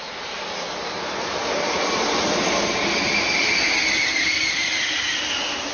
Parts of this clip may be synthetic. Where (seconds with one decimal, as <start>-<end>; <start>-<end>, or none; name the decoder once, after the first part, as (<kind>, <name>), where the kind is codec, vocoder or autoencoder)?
1.4-3.8 (vocoder, BigVGAN v2)